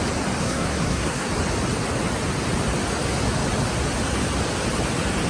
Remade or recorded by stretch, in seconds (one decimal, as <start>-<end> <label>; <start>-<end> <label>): 0.0-0.4 recorded; 0.4-1.3 remade; 1.3-5.3 recorded